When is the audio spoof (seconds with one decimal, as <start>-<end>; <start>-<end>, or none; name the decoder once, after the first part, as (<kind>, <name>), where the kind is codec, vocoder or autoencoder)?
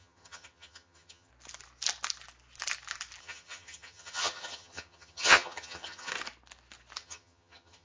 0.0-1.3 (vocoder, HiFi-GAN); 3.2-6.1; 7.0-7.8